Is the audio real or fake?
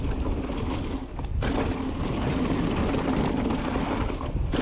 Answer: real